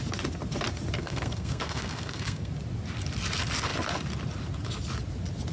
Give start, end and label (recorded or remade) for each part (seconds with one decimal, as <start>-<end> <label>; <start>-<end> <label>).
0.0-1.0 recorded; 1.0-2.5 remade; 2.5-5.5 recorded